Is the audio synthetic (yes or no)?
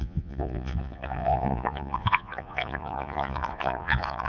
yes